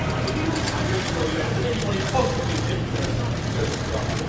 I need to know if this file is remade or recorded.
recorded